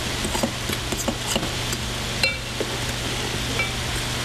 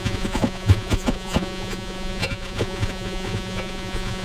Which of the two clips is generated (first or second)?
second